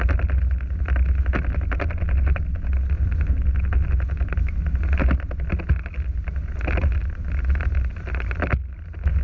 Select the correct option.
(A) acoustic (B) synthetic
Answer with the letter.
A